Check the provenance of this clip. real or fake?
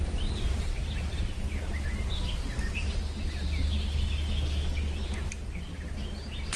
real